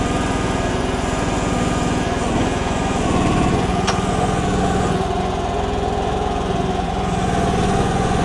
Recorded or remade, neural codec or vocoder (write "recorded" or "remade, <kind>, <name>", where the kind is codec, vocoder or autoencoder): remade, vocoder, Vocos